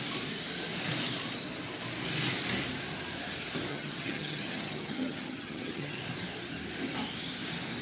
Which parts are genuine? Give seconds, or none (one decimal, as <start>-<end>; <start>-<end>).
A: 0.0-3.7; 6.0-7.8